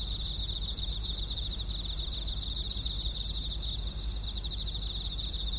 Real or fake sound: real